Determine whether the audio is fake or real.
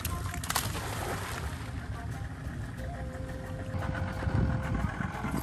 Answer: real